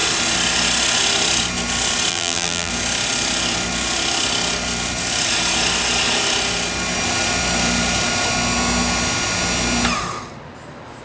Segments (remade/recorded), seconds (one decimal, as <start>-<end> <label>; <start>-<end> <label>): 0.0-2.1 recorded; 2.1-2.7 remade; 2.7-11.0 recorded